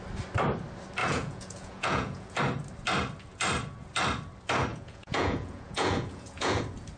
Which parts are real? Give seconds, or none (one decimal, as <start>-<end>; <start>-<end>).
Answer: 0.0-1.0; 2.4-4.7; 6.6-7.0